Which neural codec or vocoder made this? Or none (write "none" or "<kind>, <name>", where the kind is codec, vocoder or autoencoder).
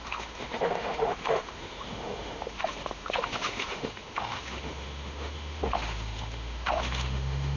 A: autoencoder, DAC-VAE